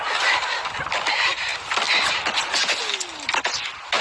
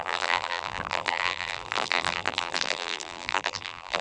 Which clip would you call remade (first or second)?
second